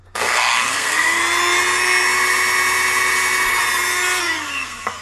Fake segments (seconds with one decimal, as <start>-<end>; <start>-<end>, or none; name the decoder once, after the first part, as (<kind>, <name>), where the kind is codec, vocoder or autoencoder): 0.0-1.2 (codec, SNAC); 4.2-5.0